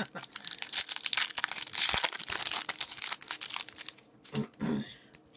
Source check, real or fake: real